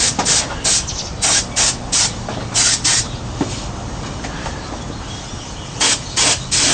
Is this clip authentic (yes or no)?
yes